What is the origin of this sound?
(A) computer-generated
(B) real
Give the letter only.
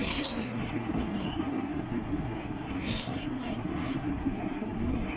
A